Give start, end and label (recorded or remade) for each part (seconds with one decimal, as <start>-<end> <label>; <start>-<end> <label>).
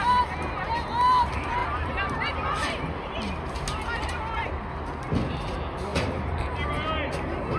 0.0-1.6 recorded; 1.6-2.7 remade; 2.7-5.9 recorded; 5.9-6.7 remade; 6.7-7.6 recorded